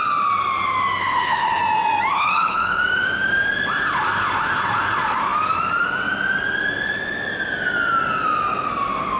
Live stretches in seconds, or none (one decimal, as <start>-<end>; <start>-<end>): 0.0-1.0; 1.6-2.1; 2.8-9.2